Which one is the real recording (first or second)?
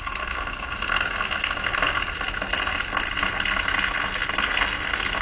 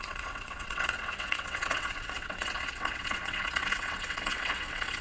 first